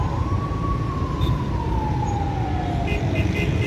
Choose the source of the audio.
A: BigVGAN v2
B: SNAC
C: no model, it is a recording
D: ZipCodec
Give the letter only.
C